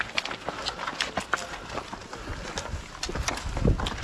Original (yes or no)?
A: yes